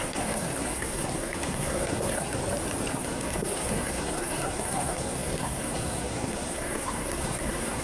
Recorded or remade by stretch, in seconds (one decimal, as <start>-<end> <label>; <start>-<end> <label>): 0.0-2.4 remade; 2.4-2.9 recorded; 2.9-7.8 remade